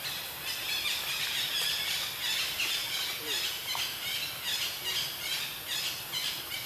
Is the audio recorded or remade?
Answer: recorded